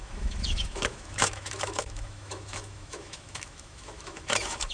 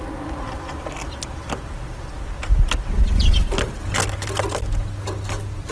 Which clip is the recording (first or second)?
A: second